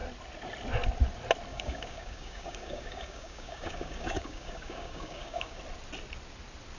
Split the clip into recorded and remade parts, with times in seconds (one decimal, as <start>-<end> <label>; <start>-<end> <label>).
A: 0.0-1.5 recorded; 1.5-5.6 remade; 5.6-6.8 recorded

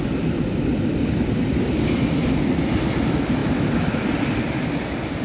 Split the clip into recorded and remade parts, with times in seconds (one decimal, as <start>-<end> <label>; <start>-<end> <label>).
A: 0.0-5.2 recorded

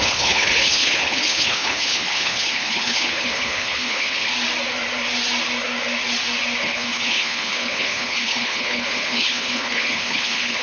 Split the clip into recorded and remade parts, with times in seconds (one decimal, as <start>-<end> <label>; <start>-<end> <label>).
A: 0.0-4.3 remade; 4.3-6.6 recorded; 6.6-10.6 remade

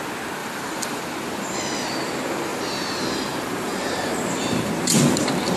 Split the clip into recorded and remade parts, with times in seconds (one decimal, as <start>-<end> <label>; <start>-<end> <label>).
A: 0.0-0.4 recorded; 0.4-1.0 remade; 1.0-2.5 recorded; 2.5-4.7 remade; 4.7-5.6 recorded

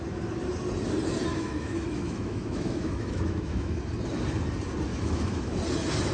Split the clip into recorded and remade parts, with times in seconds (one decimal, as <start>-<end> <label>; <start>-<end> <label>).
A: 0.0-1.3 recorded; 1.3-3.8 remade; 3.8-4.9 recorded; 4.9-5.6 remade; 5.6-6.1 recorded

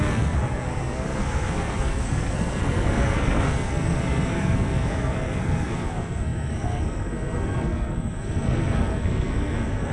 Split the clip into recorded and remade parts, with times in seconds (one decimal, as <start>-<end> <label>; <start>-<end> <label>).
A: 0.0-9.9 remade